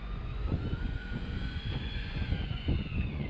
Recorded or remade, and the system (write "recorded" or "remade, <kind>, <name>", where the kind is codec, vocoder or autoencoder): remade, vocoder, Vocos